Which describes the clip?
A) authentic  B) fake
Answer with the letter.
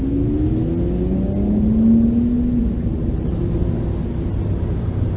A